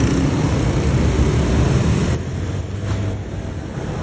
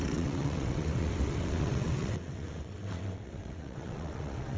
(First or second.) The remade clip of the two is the second